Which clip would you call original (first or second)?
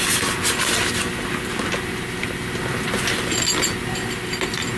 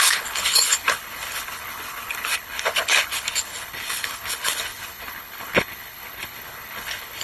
first